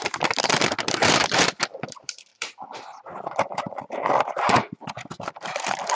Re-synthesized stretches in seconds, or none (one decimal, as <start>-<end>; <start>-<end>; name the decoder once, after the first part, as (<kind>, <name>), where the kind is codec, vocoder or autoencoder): 2.3-3.3 (vocoder, BigVGAN v2)